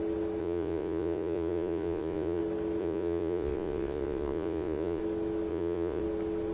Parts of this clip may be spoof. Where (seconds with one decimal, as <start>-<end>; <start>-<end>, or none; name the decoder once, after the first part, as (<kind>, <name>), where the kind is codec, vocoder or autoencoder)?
0.4-2.4 (vocoder, Vocos); 2.8-5.0; 5.5-6.0